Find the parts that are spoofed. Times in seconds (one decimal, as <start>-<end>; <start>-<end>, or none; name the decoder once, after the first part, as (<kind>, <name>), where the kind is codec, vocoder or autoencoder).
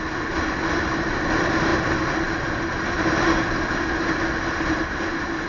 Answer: none